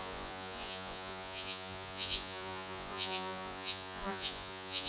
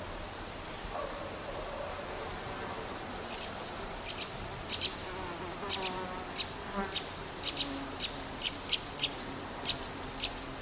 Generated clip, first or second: first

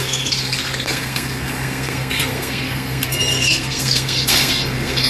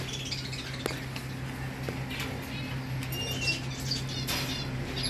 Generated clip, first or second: first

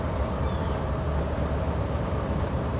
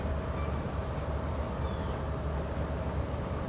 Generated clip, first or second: first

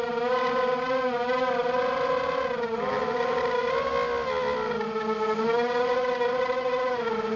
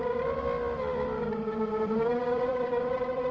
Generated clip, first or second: second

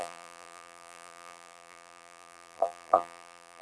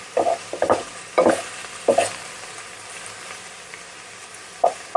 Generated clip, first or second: first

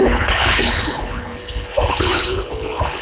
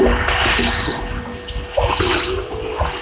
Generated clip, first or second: first